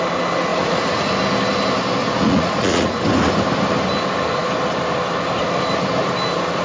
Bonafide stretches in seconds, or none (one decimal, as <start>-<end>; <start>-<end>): 0.0-0.5; 1.1-2.0; 3.0-6.6